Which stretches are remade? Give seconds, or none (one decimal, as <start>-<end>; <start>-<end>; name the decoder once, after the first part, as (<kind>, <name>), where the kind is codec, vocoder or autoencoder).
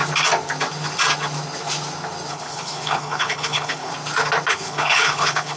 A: 2.3-3.9 (codec, HILCodec); 4.5-5.6